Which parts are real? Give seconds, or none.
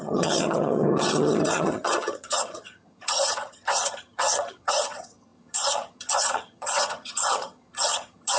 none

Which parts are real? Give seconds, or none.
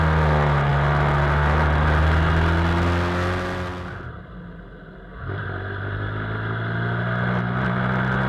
0.0-8.3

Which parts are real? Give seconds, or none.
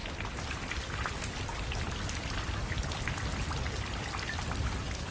0.0-5.1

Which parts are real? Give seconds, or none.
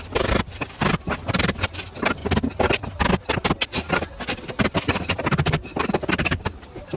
0.0-7.0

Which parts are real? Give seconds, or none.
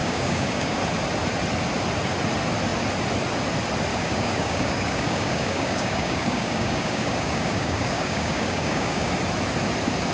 0.8-3.9; 9.1-10.1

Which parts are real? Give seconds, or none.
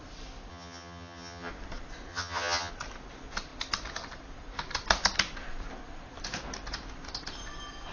0.0-0.5; 1.5-2.1; 2.7-7.9